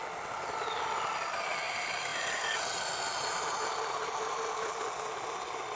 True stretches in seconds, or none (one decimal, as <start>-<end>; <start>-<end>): 0.0-5.8